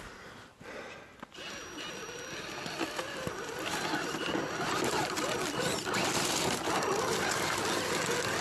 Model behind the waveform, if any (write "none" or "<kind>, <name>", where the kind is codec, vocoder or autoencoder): none